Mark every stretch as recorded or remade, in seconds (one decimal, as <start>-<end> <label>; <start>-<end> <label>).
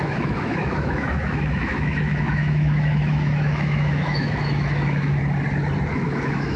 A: 0.0-5.2 remade; 5.2-5.9 recorded; 5.9-6.6 remade